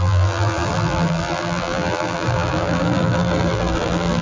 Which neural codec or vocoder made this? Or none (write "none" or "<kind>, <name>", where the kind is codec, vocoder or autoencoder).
vocoder, BigVGAN v2